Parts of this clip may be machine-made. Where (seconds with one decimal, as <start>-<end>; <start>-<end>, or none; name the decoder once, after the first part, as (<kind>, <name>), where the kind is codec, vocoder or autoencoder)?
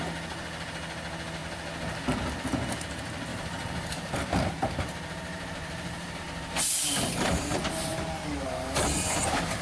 3.3-6.2 (vocoder, BigVGAN v2)